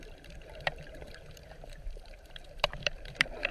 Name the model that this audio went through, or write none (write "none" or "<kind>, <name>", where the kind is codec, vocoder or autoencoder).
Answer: vocoder, BigVGAN v2